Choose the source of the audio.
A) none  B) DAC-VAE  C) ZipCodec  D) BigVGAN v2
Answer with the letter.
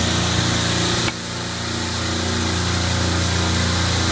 A